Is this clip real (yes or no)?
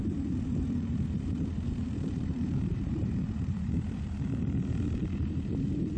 no